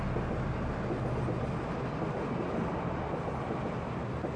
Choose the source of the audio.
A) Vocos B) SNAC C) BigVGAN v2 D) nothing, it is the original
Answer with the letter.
D